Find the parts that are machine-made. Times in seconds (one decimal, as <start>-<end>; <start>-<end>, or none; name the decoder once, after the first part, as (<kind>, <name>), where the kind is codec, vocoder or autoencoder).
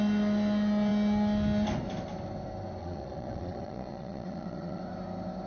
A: 2.8-4.8 (vocoder, Vocos)